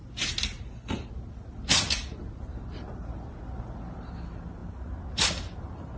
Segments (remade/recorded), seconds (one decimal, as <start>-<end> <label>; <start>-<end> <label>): 0.0-6.0 recorded